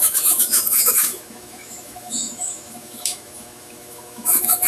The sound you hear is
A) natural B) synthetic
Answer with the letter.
B